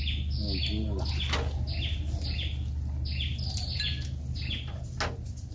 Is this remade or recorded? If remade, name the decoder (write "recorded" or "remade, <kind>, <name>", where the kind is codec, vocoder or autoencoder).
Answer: recorded